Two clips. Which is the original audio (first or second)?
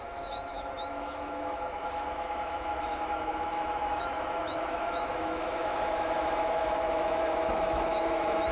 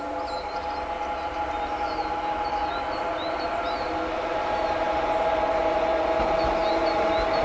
second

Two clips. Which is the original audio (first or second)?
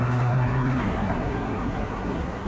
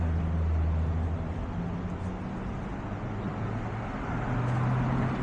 second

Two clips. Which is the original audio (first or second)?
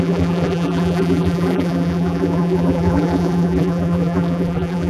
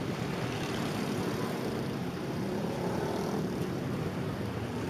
second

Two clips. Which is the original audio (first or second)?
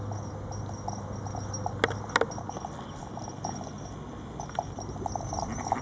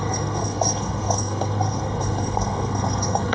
first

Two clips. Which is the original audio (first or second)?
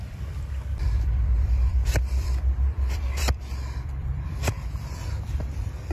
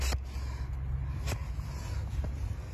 second